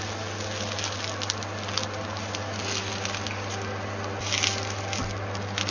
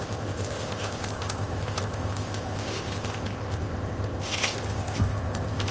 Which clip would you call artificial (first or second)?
second